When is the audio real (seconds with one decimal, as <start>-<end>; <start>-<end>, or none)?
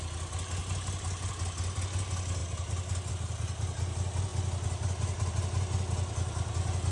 0.0-0.6; 1.3-6.9